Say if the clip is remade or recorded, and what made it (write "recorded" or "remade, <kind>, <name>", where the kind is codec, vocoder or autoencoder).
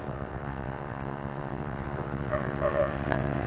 remade, vocoder, WaveNeXt